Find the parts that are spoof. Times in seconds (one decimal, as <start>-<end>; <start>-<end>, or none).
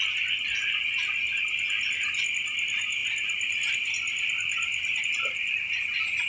3.0-5.0